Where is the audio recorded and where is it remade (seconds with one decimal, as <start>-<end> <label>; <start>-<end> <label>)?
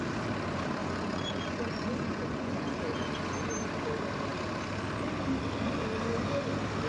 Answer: 0.0-0.8 recorded; 0.8-3.2 remade; 3.2-6.9 recorded